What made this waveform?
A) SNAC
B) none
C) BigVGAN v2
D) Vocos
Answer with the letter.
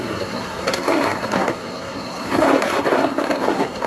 A